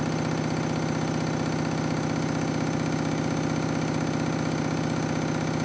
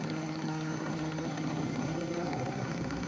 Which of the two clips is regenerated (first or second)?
second